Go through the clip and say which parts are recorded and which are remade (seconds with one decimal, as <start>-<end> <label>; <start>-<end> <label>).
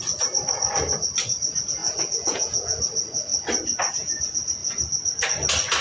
0.0-1.8 recorded; 1.8-2.8 remade; 2.8-5.8 recorded